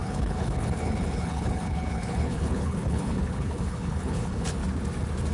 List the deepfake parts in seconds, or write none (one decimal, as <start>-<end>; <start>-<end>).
0.0-4.6